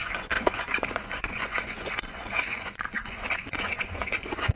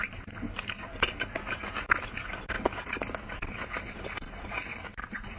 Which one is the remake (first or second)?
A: first